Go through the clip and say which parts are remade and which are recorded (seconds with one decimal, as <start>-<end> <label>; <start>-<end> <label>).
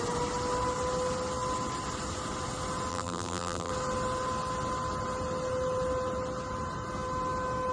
0.0-2.9 recorded; 2.9-3.7 remade; 3.7-7.7 recorded